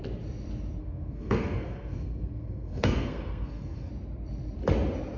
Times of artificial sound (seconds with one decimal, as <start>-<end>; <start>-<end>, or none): 0.8-3.9